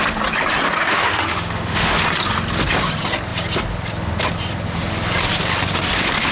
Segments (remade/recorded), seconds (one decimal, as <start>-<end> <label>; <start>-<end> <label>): 0.0-0.9 recorded; 0.9-2.0 remade; 2.0-6.3 recorded